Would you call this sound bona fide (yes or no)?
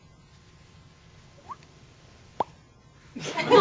yes